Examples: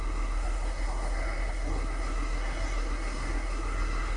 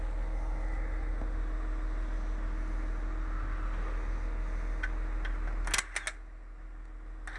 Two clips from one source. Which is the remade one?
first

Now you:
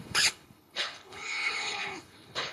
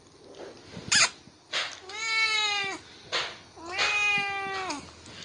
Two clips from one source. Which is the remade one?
first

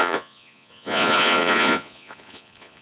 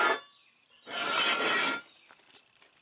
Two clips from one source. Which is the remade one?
first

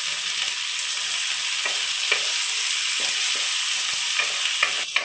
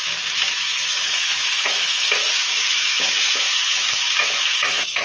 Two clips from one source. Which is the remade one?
second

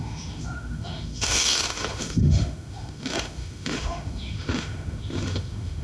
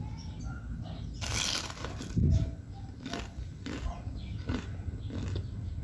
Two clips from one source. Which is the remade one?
first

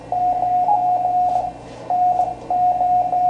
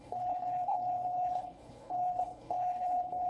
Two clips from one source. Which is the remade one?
second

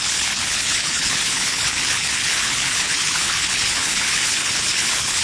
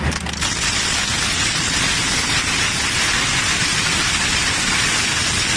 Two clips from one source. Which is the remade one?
first